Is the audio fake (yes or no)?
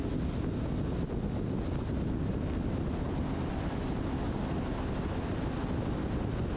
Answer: no